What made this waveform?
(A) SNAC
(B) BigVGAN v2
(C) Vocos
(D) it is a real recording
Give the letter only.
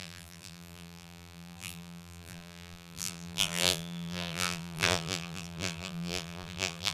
B